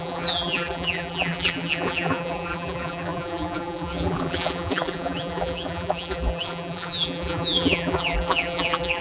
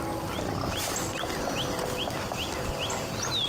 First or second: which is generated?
first